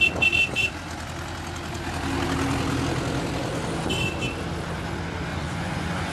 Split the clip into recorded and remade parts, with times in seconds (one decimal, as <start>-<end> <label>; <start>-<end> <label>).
0.0-5.3 recorded; 5.3-6.1 remade